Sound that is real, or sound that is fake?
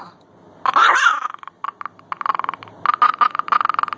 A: real